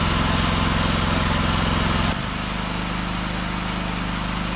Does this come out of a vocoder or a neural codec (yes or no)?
no